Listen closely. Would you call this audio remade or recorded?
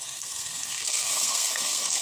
remade